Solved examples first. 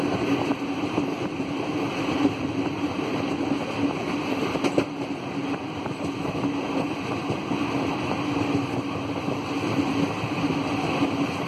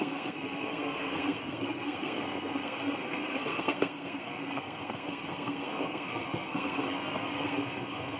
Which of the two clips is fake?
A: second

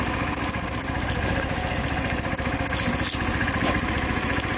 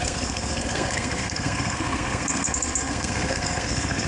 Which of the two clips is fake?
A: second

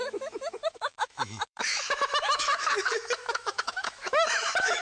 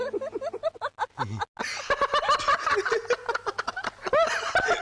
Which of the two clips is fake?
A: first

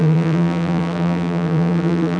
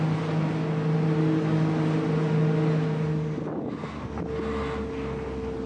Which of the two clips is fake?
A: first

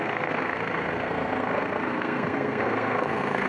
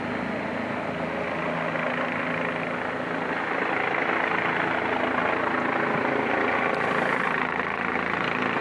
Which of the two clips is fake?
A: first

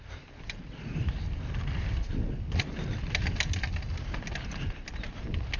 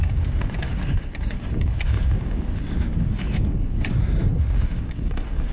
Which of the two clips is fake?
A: second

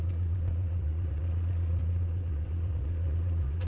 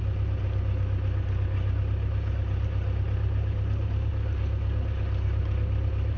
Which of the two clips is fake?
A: first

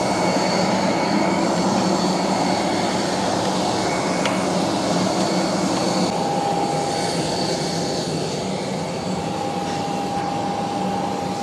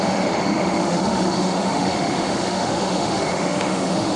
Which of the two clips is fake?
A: second